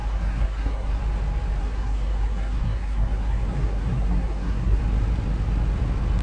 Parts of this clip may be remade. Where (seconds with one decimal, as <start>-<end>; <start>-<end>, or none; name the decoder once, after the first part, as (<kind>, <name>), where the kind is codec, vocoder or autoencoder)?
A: 0.0-1.0 (codec, SNAC); 1.6-4.8